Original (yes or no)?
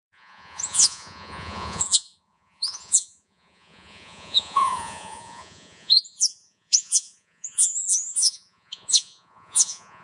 no